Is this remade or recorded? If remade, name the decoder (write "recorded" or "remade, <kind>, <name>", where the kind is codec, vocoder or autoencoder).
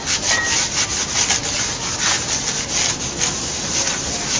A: recorded